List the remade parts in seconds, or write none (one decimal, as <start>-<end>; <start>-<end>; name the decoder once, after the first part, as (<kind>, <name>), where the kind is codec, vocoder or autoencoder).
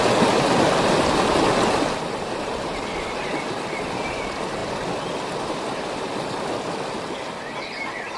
none